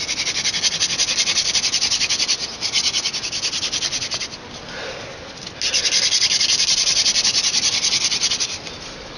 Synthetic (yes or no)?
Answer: no